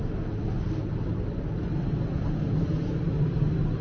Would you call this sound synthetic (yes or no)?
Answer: no